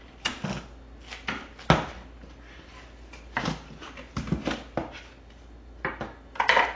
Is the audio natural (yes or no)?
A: yes